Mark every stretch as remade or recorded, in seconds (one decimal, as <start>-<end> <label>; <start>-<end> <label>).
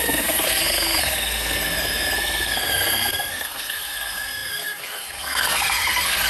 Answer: 0.0-6.3 remade